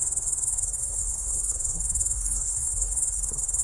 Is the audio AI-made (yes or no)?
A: yes